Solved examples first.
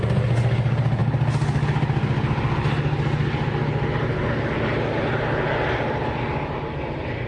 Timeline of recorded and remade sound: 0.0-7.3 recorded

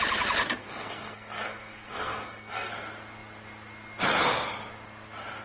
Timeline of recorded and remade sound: 0.0-0.6 recorded; 0.6-2.7 remade; 2.7-5.4 recorded

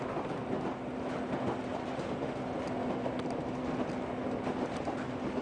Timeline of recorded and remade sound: 0.0-1.7 recorded; 1.7-3.9 remade; 3.9-5.4 recorded

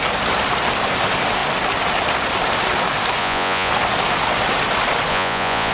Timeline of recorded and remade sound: 0.0-3.2 recorded; 3.2-3.7 remade; 3.7-5.1 recorded; 5.1-5.7 remade

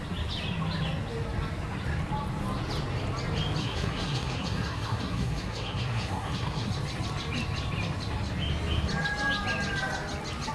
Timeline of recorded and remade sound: 0.0-3.6 recorded; 3.6-6.7 remade; 6.7-10.5 recorded

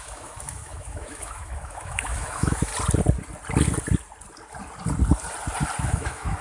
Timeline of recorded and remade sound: 0.0-2.7 remade; 2.7-5.8 recorded; 5.8-6.4 remade